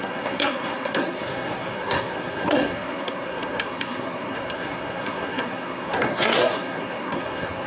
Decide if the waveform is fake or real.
fake